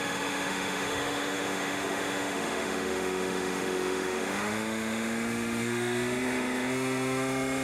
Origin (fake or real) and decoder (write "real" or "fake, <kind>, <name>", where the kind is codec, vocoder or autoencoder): fake, autoencoder, DAC-VAE